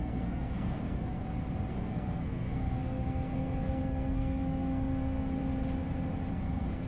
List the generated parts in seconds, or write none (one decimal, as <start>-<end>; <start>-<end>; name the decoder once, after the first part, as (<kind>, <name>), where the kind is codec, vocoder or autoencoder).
0.0-1.2 (codec, SNAC); 1.7-5.4; 6.3-6.9